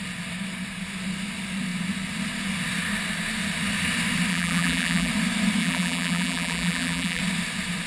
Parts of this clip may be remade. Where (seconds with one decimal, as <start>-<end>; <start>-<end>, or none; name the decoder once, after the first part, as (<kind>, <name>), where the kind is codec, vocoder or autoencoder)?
4.3-5.1 (vocoder, BigVGAN v2); 5.6-7.2